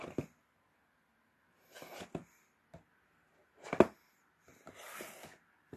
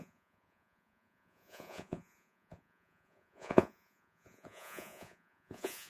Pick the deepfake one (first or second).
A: second